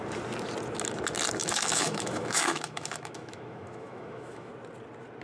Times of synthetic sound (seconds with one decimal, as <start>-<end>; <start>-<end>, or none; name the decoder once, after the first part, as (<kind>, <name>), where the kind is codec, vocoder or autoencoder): 1.4-4.5 (autoencoder, DAC-VAE)